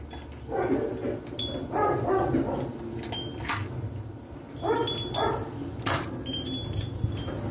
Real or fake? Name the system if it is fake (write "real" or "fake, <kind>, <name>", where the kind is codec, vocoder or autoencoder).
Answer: real